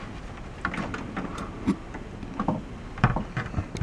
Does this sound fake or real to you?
real